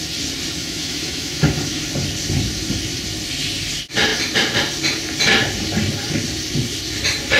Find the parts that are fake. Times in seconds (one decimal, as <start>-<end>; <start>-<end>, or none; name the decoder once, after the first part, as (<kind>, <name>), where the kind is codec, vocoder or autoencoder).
0.6-1.8 (autoencoder, DAC-VAE)